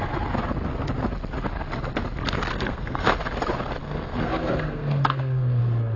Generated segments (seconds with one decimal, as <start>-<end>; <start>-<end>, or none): 2.5-3.1; 3.8-5.6